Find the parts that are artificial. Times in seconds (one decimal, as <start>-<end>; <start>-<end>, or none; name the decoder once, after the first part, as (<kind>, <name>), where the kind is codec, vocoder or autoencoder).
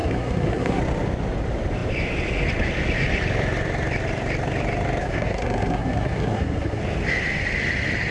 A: 0.0-0.8 (codec, SNAC); 5.0-6.8